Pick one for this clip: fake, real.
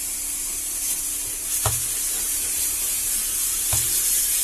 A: real